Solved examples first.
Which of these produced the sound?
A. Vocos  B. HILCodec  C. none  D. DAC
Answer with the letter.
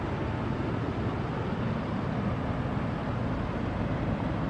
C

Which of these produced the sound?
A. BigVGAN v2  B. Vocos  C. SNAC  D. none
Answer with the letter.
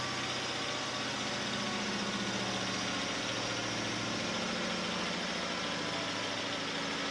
D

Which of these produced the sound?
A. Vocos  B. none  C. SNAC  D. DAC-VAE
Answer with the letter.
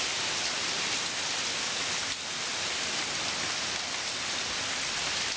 B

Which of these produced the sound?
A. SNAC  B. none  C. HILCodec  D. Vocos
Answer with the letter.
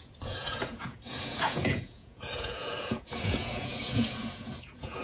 D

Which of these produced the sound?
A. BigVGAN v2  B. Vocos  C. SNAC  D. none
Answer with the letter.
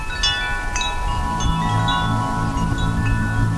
D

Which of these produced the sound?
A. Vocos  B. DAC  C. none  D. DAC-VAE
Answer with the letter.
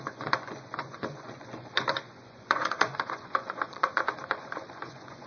A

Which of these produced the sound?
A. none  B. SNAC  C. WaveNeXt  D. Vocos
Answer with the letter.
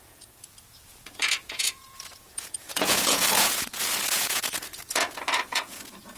D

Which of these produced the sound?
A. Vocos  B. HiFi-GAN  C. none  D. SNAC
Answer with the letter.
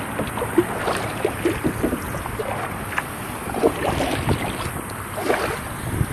C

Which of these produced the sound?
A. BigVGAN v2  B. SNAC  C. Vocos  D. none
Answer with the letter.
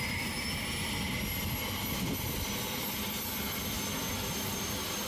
D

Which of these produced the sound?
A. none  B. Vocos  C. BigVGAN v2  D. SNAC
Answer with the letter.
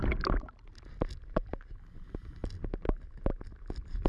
A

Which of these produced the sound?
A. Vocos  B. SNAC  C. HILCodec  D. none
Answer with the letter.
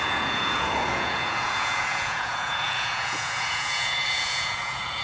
A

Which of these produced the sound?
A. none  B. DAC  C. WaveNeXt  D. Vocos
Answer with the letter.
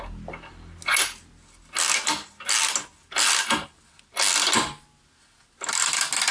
A